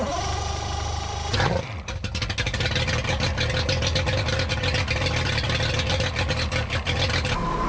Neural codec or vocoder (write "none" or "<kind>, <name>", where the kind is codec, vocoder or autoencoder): none